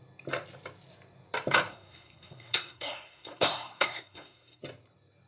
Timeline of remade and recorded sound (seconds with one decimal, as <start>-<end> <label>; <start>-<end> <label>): 0.0-1.7 recorded; 1.7-4.6 remade; 4.6-5.3 recorded